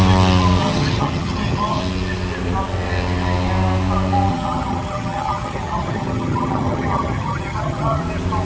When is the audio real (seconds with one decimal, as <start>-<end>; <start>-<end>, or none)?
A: 0.0-0.6; 1.8-4.3; 8.0-8.5